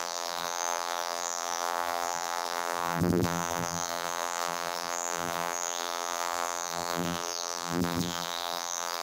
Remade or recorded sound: remade